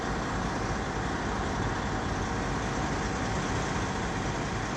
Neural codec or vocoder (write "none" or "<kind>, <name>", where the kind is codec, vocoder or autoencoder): none